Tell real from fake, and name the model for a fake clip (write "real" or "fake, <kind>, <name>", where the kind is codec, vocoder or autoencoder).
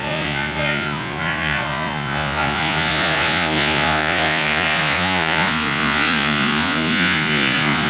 fake, vocoder, Vocos